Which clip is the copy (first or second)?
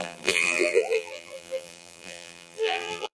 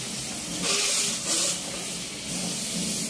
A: first